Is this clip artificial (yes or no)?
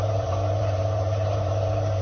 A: yes